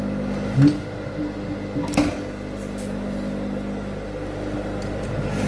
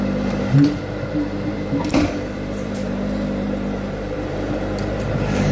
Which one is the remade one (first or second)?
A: second